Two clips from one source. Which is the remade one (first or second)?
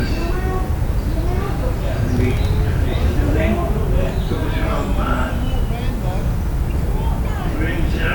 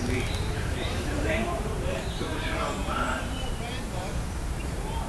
second